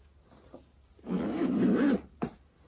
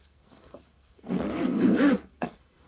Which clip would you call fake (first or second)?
second